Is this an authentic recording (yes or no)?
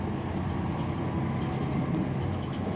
yes